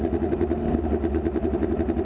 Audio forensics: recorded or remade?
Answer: recorded